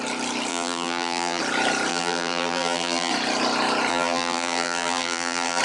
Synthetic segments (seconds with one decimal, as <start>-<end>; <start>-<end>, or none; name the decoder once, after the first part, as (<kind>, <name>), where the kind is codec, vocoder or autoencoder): 0.5-1.4 (vocoder, BigVGAN v2); 1.9-3.1; 3.9-5.6